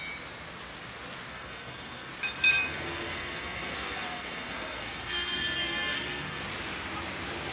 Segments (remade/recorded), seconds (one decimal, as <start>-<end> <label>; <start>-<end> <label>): 0.0-1.3 recorded; 1.3-2.1 remade; 2.1-2.5 recorded; 2.5-6.4 remade; 6.4-7.5 recorded